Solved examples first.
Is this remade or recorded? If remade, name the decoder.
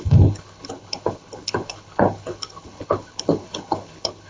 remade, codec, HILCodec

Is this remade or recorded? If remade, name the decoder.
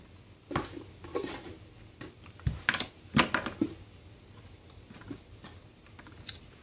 recorded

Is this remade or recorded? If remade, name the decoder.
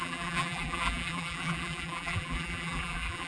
remade, vocoder, BigVGAN v2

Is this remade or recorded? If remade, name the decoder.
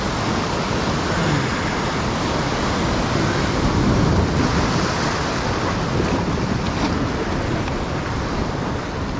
recorded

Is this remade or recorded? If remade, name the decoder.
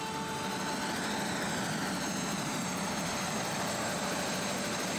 recorded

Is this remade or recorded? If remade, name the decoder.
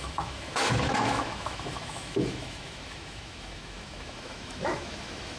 remade, autoencoder, DAC-VAE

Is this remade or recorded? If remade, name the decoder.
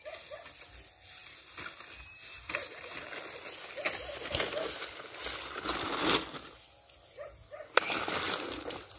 recorded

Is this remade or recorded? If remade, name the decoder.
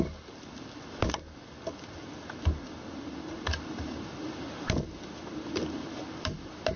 recorded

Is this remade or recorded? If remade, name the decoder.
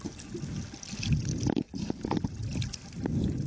recorded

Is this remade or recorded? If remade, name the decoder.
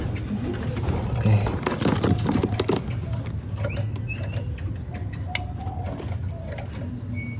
recorded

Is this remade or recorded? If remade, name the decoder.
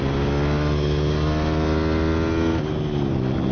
recorded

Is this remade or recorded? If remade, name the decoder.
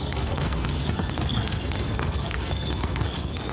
remade, codec, SNAC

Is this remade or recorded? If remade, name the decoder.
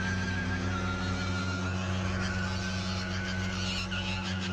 recorded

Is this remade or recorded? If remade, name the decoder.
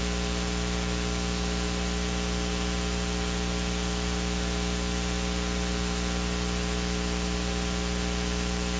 recorded